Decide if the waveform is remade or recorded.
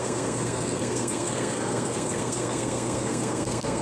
remade